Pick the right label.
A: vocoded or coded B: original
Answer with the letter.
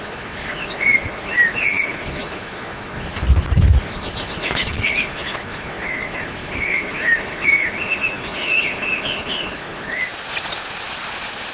B